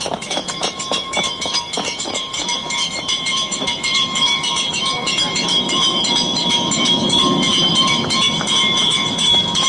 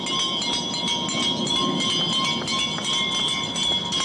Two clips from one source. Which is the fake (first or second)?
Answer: first